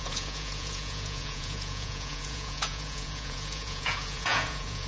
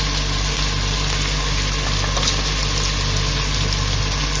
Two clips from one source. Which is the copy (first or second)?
first